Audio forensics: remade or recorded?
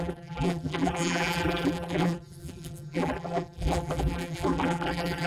remade